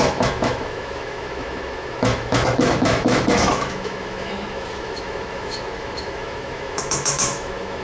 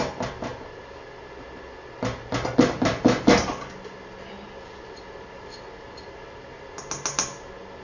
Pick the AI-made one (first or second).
first